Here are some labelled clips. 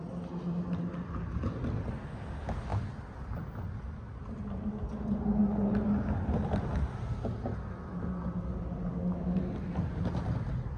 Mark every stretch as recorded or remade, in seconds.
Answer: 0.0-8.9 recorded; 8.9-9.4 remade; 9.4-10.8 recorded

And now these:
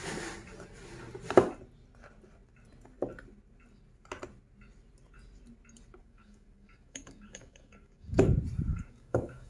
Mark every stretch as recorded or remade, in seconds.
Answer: 0.0-6.0 recorded; 6.0-8.2 remade; 8.2-8.7 recorded; 8.7-9.5 remade

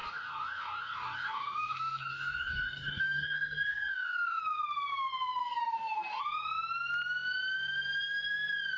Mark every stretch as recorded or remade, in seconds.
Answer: 0.0-4.4 remade; 4.4-5.4 recorded; 5.4-6.2 remade; 6.2-8.8 recorded

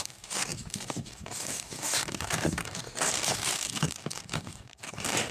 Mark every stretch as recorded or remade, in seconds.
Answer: 0.0-5.3 remade

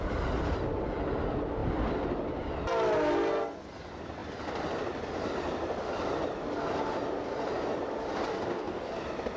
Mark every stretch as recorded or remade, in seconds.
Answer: 0.0-8.3 recorded; 8.3-8.9 remade; 8.9-9.4 recorded

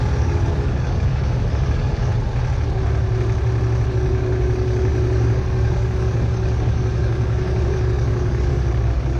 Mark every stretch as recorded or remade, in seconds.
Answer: 0.0-2.1 remade; 2.1-3.9 recorded; 3.9-9.2 remade